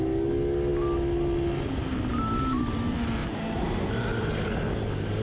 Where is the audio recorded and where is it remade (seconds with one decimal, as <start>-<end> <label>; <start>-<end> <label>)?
0.0-3.2 recorded; 3.2-4.0 remade; 4.0-5.2 recorded